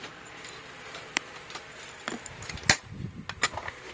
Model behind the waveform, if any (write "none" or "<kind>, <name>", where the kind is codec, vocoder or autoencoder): none